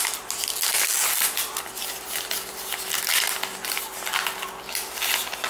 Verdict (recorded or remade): recorded